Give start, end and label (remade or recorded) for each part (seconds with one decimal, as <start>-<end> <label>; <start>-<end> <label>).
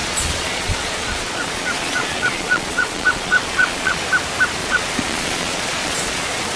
0.0-4.0 remade; 4.0-4.6 recorded; 4.6-6.6 remade